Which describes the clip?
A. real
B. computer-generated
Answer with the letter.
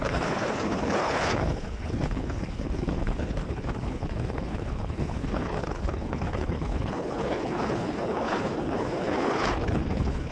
B